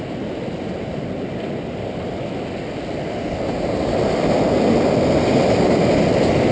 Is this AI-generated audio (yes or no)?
no